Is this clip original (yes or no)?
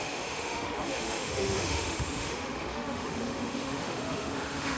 no